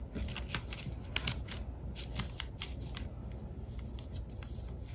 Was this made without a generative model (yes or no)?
yes